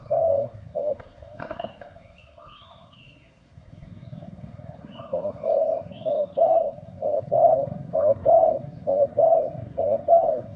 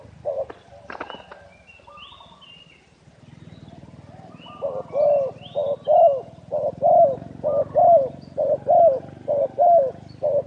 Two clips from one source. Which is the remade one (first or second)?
first